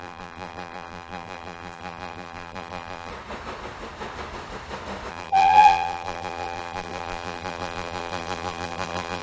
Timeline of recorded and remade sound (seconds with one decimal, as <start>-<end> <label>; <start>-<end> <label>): 0.0-3.1 remade; 3.1-5.1 recorded; 5.1-9.2 remade